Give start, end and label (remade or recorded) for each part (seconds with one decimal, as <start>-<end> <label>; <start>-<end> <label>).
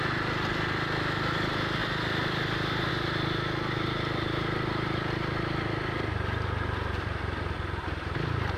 0.0-1.8 recorded; 1.8-2.9 remade; 2.9-8.6 recorded